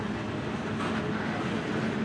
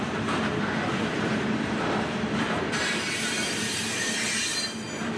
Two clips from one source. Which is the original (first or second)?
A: first